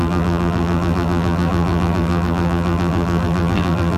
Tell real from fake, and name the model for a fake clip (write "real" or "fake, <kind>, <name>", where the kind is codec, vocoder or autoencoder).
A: fake, vocoder, BigVGAN v2